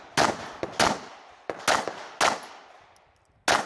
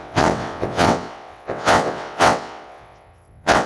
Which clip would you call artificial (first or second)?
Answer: second